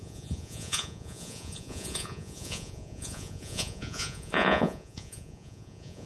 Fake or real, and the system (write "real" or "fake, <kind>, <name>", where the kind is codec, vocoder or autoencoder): fake, vocoder, Vocos